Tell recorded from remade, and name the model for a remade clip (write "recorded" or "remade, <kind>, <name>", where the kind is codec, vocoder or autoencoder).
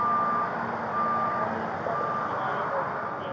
recorded